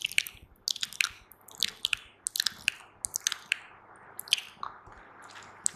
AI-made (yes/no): no